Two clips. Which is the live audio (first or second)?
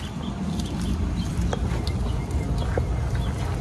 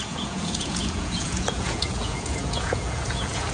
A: first